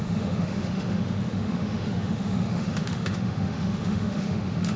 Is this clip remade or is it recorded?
remade